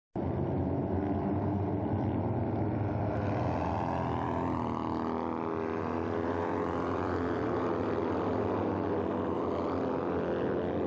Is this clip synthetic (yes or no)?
no